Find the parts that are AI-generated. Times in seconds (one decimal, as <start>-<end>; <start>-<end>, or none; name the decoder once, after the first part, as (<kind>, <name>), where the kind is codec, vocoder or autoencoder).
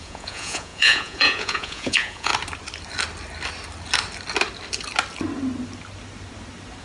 0.0-2.3 (vocoder, Vocos)